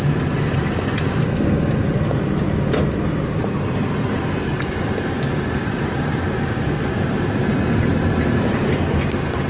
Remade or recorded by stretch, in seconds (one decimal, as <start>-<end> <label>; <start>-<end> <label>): 0.0-4.5 recorded; 4.5-7.5 remade; 7.5-9.5 recorded